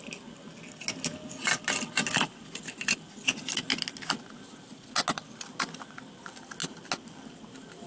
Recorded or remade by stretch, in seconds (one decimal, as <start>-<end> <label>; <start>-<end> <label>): 0.0-7.9 recorded